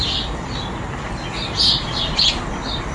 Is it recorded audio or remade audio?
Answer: recorded